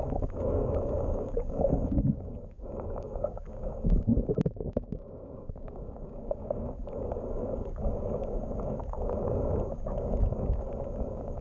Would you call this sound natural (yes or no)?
no